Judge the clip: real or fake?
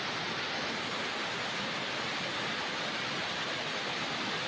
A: real